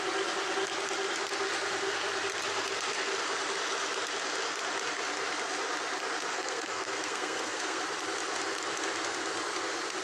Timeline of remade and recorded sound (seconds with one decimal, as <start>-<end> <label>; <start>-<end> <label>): 0.0-6.3 recorded; 6.3-7.8 remade; 7.8-10.0 recorded